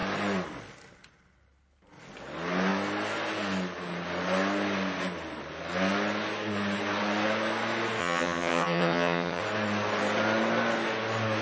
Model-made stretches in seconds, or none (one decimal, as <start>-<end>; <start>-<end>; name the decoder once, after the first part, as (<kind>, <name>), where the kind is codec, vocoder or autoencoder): 8.0-9.4 (vocoder, HiFi-GAN)